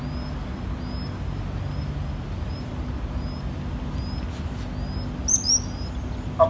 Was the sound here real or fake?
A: real